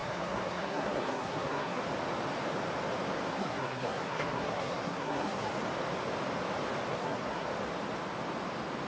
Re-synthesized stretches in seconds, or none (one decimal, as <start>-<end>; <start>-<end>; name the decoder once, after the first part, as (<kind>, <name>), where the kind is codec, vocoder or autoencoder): 0.0-1.8 (codec, SNAC); 3.4-5.5; 6.9-7.5